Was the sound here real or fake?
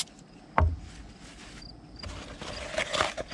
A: real